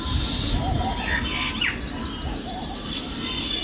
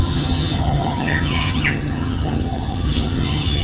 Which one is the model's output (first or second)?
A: second